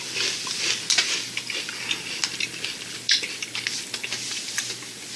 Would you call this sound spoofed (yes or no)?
no